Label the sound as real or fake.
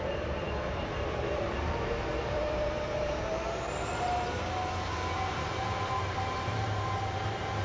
fake